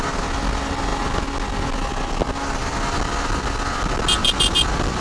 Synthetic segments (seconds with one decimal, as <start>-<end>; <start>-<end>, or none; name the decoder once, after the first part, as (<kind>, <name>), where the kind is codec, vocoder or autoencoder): none